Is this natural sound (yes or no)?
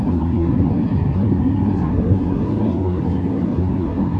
no